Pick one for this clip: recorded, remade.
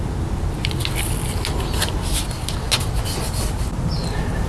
recorded